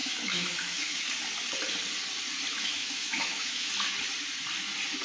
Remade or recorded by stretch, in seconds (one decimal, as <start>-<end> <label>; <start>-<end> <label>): 0.0-1.1 remade; 1.1-2.5 recorded; 2.5-3.7 remade; 3.7-5.0 recorded